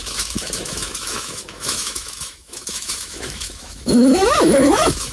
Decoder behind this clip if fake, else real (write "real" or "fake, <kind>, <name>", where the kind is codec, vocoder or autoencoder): fake, autoencoder, DAC-VAE